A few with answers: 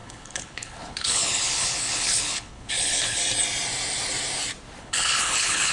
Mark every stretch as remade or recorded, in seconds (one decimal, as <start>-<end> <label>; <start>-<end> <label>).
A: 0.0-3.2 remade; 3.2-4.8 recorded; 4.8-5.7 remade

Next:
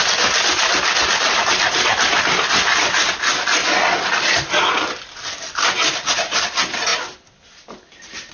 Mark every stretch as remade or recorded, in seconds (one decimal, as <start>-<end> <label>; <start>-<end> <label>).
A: 0.0-8.3 recorded

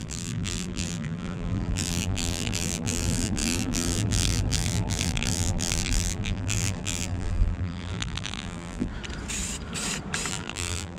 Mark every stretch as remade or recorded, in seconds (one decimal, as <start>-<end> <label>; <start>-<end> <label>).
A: 0.0-8.9 remade; 8.9-10.3 recorded; 10.3-11.0 remade

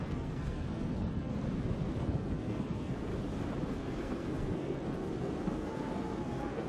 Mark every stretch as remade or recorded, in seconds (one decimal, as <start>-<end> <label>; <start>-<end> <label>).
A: 0.0-1.3 remade; 1.3-2.0 recorded; 2.0-3.1 remade; 3.1-3.7 recorded; 3.7-6.7 remade